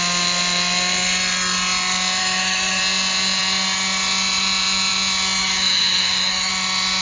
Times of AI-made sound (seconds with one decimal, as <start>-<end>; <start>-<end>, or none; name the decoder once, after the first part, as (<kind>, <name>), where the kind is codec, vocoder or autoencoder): 2.2-2.8 (autoencoder, DAC-VAE); 5.4-6.5